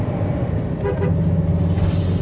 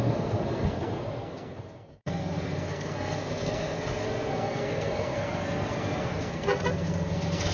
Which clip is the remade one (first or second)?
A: second